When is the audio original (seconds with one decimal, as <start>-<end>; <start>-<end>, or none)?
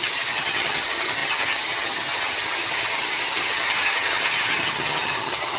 none